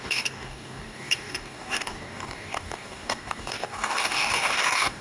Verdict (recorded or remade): remade